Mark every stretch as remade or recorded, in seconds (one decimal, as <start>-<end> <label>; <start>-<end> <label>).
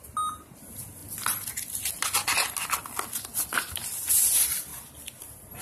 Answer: 0.0-5.6 recorded